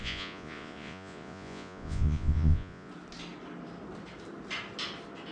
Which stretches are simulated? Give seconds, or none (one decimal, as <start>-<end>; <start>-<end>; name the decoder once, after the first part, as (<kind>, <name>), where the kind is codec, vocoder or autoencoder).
0.0-2.9 (vocoder, Vocos)